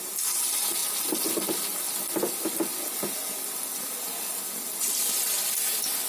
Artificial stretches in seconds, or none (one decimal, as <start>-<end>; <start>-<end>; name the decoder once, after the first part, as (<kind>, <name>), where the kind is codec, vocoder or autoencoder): none